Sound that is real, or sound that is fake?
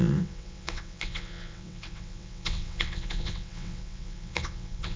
fake